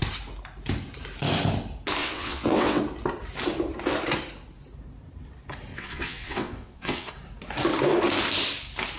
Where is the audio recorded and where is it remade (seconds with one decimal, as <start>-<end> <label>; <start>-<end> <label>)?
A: 0.0-2.0 recorded; 2.0-2.8 remade; 2.8-5.7 recorded; 5.7-7.1 remade; 7.1-9.0 recorded